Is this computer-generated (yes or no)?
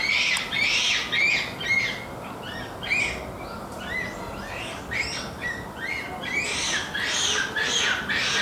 no